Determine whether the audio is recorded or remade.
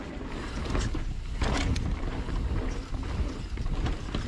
recorded